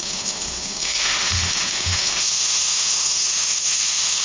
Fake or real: fake